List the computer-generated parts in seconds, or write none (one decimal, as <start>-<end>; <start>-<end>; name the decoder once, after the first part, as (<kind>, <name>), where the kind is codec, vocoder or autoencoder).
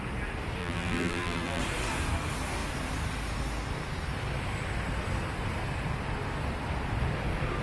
0.6-1.6 (vocoder, BigVGAN v2)